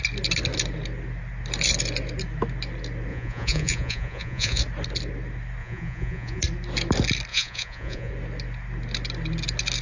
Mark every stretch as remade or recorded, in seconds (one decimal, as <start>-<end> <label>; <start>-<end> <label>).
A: 0.0-3.1 recorded; 3.1-4.6 remade; 4.6-5.6 recorded; 5.6-6.4 remade; 6.4-7.3 recorded; 7.3-8.1 remade; 8.1-9.8 recorded